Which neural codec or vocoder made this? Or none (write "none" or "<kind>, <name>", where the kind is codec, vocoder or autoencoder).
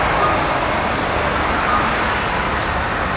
none